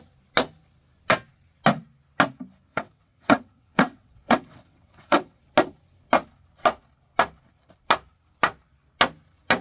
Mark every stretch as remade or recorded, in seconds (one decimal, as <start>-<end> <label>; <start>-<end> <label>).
0.0-2.7 recorded; 2.7-5.4 remade; 5.4-9.6 recorded